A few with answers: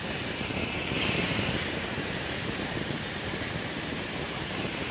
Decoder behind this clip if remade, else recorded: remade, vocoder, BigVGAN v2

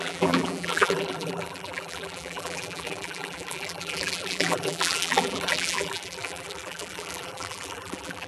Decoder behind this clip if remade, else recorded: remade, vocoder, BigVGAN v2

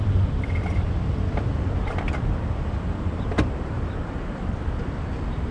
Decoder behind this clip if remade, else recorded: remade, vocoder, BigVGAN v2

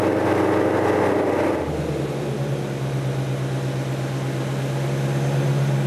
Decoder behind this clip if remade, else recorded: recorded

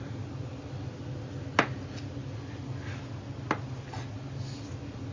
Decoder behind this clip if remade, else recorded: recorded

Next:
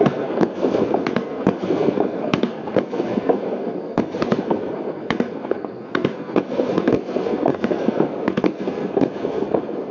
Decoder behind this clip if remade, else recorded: remade, codec, SNAC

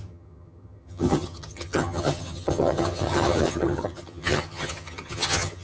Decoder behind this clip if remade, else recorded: remade, vocoder, HiFi-GAN